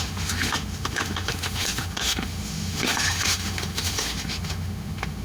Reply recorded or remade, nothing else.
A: remade